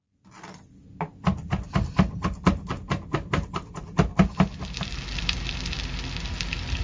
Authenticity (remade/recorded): recorded